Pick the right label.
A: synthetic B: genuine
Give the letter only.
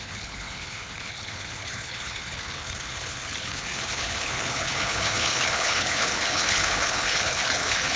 A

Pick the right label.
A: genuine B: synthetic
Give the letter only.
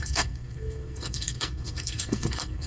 B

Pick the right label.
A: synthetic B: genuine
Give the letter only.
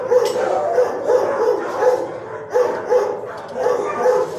B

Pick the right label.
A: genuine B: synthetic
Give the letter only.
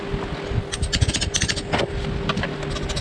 A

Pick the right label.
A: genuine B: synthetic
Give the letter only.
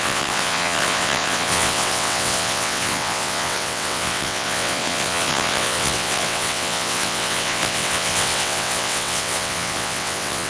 B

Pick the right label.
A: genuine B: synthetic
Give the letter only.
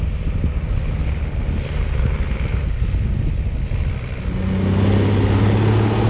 A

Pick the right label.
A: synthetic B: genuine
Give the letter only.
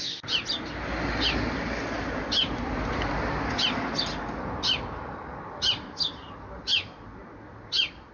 B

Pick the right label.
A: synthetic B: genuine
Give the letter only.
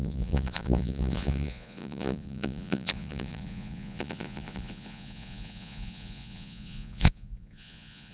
A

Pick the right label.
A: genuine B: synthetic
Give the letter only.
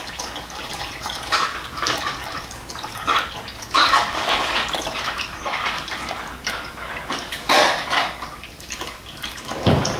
B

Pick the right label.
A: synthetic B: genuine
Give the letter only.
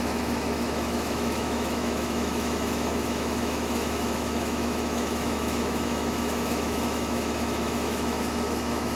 A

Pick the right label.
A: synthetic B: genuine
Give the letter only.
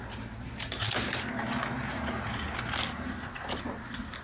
A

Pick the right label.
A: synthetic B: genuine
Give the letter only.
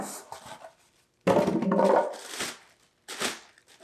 B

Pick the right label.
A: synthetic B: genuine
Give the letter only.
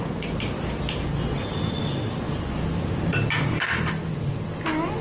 B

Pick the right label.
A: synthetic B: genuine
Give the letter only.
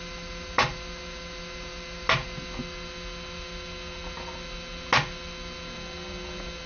B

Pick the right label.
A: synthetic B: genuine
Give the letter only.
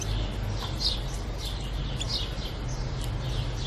B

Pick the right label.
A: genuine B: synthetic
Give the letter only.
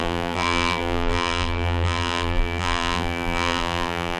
B